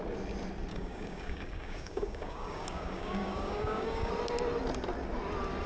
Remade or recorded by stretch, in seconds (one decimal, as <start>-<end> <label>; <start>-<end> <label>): 0.0-0.7 recorded; 0.7-4.1 remade; 4.1-5.7 recorded